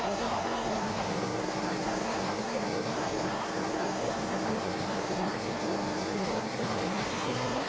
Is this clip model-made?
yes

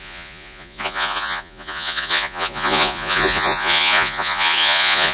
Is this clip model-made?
yes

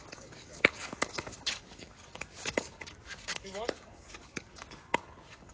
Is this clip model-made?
yes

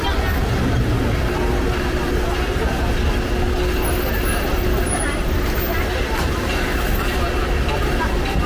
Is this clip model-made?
no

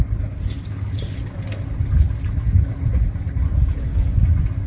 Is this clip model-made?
no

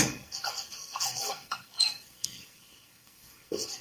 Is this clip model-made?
yes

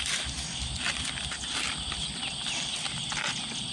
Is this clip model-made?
no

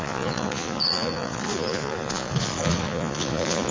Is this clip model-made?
yes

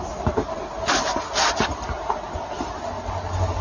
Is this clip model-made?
no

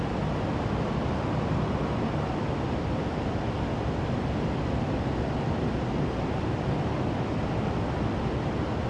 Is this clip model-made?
no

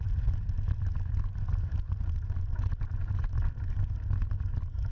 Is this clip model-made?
no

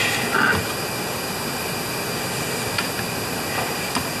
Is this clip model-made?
no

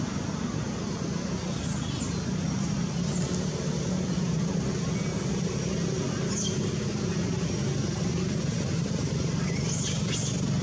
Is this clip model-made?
no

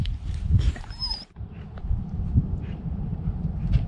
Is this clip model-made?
yes